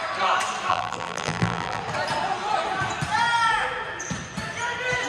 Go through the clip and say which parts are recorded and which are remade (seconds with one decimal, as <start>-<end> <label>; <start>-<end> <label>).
0.0-0.7 recorded; 0.7-1.8 remade; 1.8-5.1 recorded